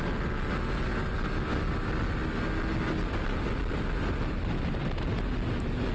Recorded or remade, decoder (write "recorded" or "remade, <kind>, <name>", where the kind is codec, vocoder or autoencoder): recorded